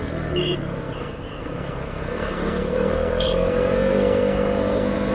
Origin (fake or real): fake